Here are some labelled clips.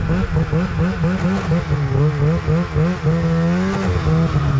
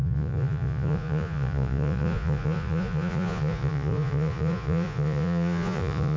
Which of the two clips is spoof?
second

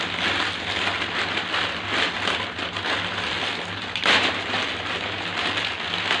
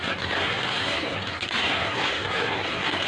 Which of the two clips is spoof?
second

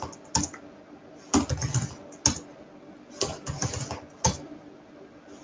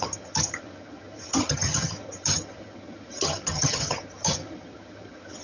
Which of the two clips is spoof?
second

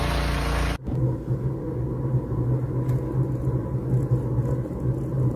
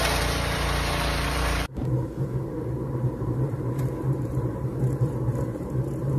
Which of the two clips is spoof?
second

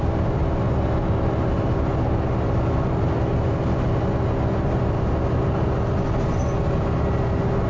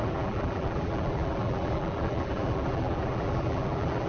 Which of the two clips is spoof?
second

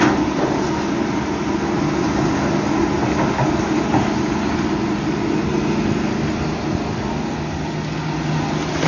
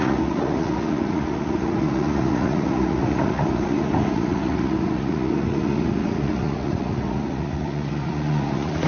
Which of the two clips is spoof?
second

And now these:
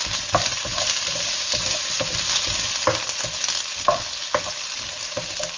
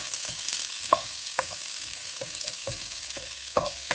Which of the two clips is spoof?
second